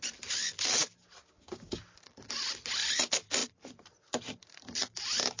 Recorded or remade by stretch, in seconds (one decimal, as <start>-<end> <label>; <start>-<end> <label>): 0.0-1.2 recorded; 1.2-1.8 remade; 1.8-5.4 recorded